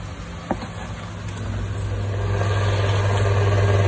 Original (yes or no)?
yes